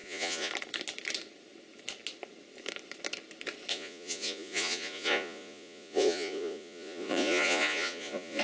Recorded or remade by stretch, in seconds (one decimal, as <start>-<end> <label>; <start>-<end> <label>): 0.0-0.5 remade; 0.5-3.7 recorded; 3.7-8.4 remade